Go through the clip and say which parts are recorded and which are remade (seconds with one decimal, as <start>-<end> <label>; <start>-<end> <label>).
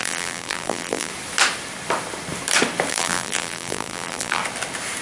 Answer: 0.0-1.1 remade; 1.1-2.9 recorded; 2.9-4.4 remade; 4.4-5.0 recorded